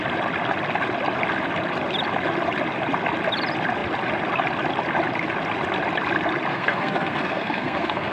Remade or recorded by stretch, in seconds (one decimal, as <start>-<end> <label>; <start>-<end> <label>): 0.0-6.5 recorded; 6.5-8.1 remade